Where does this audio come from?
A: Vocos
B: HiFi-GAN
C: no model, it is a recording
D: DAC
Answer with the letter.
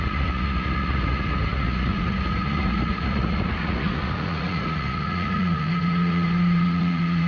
A